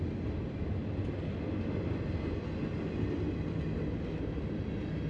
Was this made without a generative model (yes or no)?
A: yes